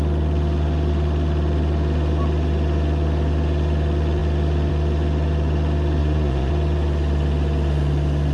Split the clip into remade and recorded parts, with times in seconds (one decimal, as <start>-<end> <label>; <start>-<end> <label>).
0.0-6.0 recorded; 6.0-6.5 remade; 6.5-8.3 recorded